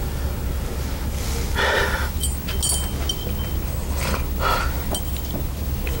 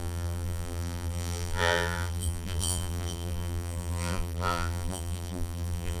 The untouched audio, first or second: first